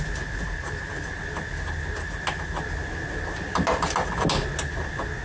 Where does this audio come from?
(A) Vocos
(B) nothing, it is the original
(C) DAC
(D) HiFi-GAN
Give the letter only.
B